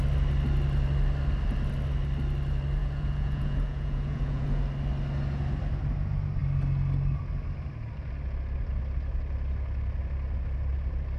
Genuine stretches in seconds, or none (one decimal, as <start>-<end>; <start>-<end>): 0.0-2.8; 4.6-11.2